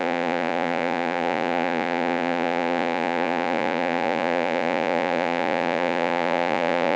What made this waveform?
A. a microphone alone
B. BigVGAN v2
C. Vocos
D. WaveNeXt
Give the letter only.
C